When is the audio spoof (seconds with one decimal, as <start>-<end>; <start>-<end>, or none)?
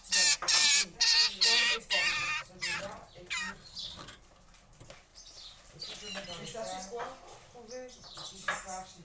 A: none